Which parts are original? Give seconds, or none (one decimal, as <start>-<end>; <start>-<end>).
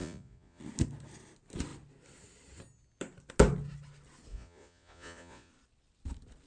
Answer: 0.6-4.3; 5.5-6.5